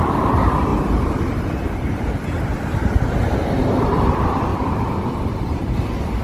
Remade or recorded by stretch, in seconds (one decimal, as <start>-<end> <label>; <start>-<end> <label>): 0.0-2.2 remade; 2.2-3.6 recorded; 3.6-6.2 remade